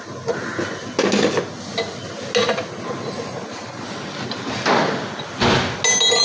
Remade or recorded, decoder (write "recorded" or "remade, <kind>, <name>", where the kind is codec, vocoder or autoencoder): recorded